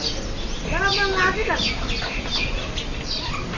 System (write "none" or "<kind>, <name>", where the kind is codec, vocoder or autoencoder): none